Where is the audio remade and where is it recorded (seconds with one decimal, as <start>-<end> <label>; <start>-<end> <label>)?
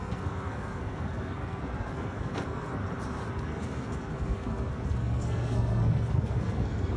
0.0-2.8 remade; 2.8-3.3 recorded; 3.3-7.0 remade